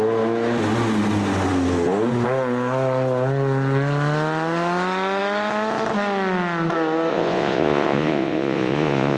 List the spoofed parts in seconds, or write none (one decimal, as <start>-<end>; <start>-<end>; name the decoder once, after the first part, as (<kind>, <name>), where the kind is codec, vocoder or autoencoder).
7.1-9.2 (vocoder, Vocos)